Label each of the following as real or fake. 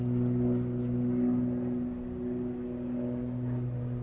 real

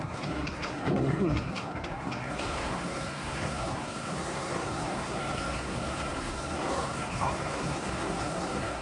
fake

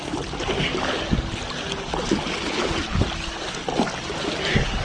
real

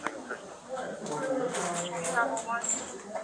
real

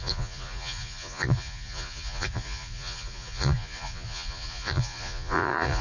fake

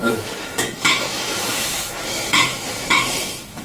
fake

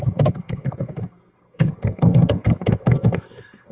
fake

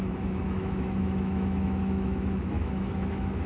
fake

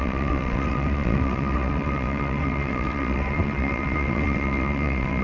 fake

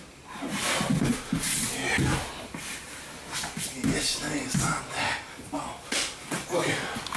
real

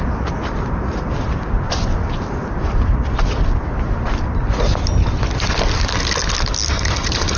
real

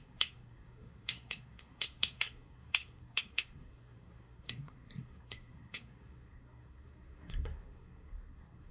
fake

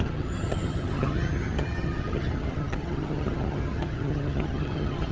fake